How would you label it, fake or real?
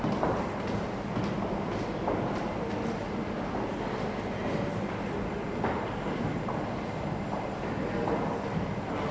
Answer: real